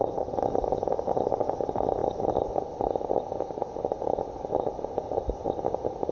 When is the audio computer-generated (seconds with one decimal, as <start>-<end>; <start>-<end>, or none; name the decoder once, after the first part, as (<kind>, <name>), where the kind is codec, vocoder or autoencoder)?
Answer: none